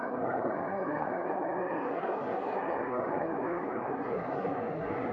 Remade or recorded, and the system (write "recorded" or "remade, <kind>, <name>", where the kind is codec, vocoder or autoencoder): remade, codec, SNAC